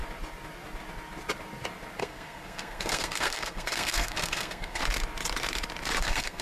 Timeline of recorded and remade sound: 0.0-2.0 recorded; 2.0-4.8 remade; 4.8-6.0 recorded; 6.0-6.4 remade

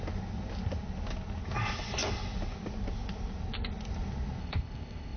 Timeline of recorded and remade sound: 0.0-4.4 recorded; 4.4-5.2 remade

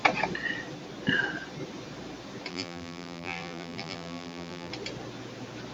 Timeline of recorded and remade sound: 0.0-2.5 recorded; 2.5-4.7 remade; 4.7-5.7 recorded

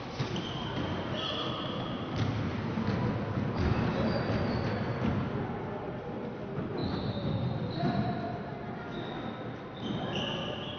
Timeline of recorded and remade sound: 0.0-10.8 recorded